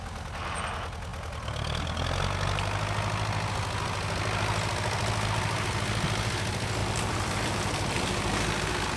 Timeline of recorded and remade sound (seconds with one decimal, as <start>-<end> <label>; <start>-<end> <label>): 0.0-6.8 recorded; 6.8-9.0 remade